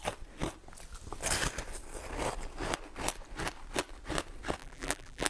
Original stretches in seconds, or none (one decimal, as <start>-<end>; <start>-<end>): 0.0-4.6